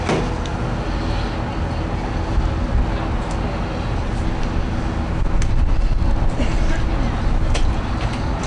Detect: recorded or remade recorded